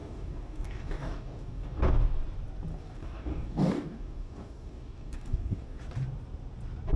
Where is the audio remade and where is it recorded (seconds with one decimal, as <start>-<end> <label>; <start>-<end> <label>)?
0.0-1.8 remade; 1.8-2.7 recorded; 2.7-5.8 remade; 5.8-7.0 recorded